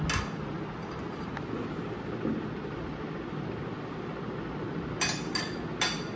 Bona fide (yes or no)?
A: yes